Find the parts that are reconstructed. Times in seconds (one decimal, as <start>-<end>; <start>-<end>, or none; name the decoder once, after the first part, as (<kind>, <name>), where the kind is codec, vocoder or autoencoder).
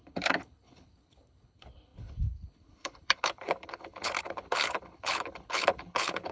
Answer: 0.0-6.3 (codec, HILCodec)